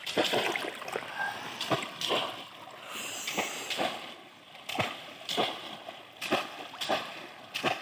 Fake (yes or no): no